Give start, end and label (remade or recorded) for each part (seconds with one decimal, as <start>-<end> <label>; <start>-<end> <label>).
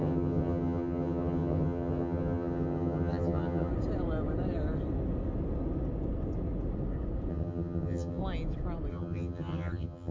0.0-3.7 remade; 3.7-7.3 recorded; 7.3-8.2 remade; 8.2-8.9 recorded; 8.9-10.1 remade